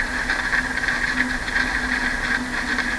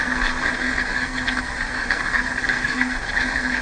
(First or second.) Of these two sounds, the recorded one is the first